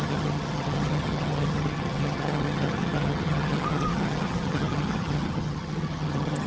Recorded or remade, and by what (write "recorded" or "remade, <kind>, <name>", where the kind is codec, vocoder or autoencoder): remade, vocoder, HiFi-GAN